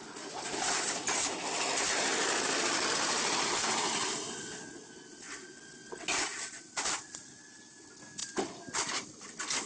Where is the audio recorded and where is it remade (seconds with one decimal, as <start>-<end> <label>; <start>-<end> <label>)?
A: 0.0-2.1 recorded; 2.1-4.9 remade; 4.9-6.3 recorded; 6.3-7.4 remade; 7.4-9.7 recorded